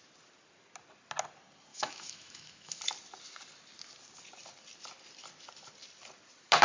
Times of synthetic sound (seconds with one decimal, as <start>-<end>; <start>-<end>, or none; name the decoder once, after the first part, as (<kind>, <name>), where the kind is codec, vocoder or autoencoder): 1.7-2.8 (autoencoder, DAC-VAE)

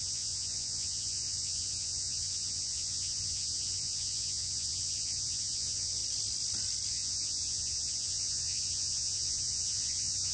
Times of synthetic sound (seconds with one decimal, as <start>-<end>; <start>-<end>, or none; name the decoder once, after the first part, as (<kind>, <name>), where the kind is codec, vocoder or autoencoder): 0.0-6.0 (vocoder, Vocos); 6.9-10.3

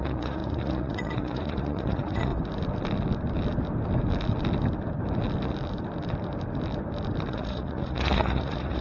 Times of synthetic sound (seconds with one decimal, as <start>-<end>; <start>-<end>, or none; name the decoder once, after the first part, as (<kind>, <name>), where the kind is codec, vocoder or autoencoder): 0.0-2.3 (vocoder, Vocos); 7.3-8.8

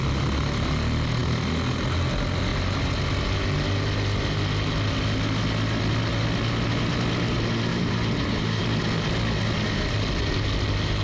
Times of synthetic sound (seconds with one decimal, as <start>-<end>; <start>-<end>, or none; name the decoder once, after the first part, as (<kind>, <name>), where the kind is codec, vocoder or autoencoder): 7.7-8.6 (vocoder, BigVGAN v2)

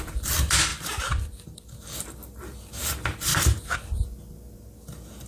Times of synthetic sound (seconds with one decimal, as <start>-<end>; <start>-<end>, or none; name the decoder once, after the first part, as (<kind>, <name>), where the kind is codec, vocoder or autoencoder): 0.0-3.3 (vocoder, BigVGAN v2)